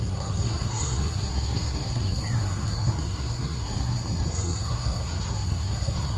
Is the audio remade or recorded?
remade